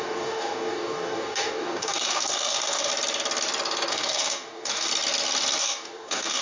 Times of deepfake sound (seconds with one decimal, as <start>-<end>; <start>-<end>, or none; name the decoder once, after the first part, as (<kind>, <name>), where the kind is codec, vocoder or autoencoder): 0.0-2.9 (codec, DAC); 3.9-4.9; 5.6-6.4